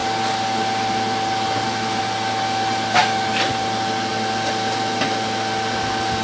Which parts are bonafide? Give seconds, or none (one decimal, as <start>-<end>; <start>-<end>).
0.0-6.2